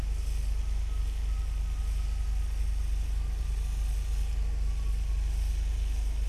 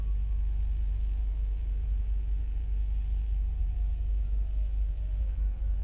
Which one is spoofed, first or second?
second